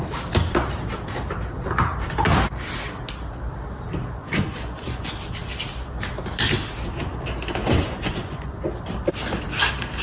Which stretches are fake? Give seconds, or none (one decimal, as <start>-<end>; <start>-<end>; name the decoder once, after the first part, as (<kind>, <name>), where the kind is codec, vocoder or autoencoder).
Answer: 4.2-5.1 (vocoder, Vocos); 7.6-8.7